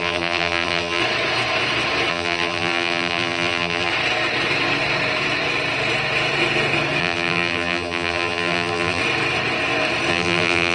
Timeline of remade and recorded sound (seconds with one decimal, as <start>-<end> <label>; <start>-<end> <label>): 0.0-1.0 remade; 1.0-2.1 recorded; 2.1-3.9 remade; 3.9-7.0 recorded; 7.0-9.0 remade; 9.0-10.1 recorded; 10.1-10.7 remade